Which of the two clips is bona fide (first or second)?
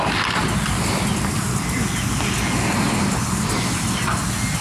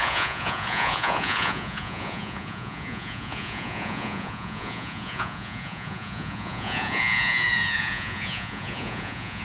first